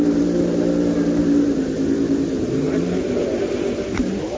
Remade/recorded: recorded